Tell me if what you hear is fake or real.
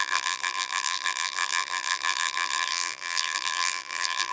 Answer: fake